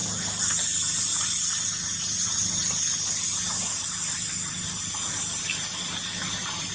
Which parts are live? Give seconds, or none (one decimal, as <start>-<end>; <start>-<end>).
0.0-6.7